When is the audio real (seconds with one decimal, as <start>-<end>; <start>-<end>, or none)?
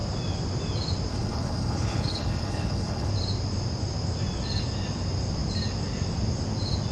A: 0.0-1.1; 3.1-6.9